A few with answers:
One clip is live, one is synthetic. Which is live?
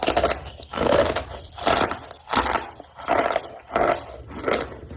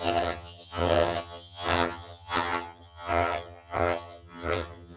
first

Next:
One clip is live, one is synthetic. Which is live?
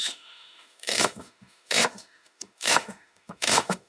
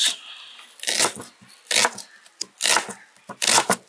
second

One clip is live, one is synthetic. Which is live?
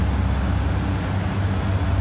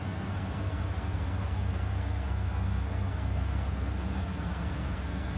first